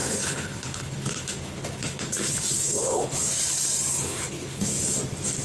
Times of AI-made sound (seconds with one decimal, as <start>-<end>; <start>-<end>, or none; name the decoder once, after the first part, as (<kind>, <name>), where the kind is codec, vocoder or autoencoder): 0.0-3.2 (codec, HILCodec); 3.9-4.7